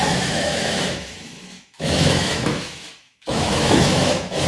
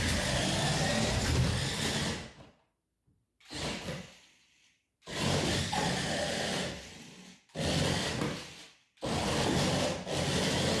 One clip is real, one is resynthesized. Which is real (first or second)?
second